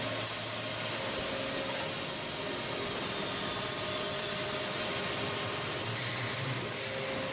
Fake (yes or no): no